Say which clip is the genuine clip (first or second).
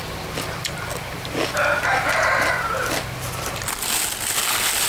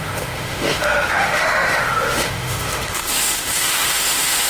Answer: first